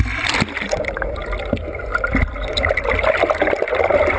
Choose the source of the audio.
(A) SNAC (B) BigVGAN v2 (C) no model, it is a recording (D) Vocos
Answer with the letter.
B